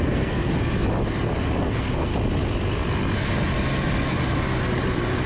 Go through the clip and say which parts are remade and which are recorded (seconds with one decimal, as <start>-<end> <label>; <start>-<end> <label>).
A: 0.0-0.5 remade; 0.5-1.6 recorded; 1.6-2.1 remade; 2.1-5.3 recorded